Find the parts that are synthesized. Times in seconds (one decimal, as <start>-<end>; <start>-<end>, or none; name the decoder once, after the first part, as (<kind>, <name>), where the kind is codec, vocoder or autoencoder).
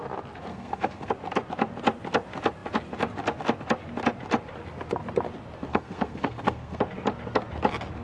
0.5-1.1 (codec, SNAC); 5.7-6.8